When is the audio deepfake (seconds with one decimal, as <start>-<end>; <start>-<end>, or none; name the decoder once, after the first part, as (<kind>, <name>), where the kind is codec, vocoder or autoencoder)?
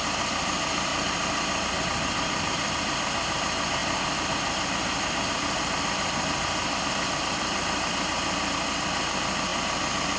0.0-0.9 (vocoder, BigVGAN v2); 1.7-9.5